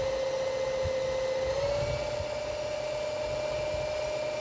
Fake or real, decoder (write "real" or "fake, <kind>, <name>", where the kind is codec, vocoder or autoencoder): real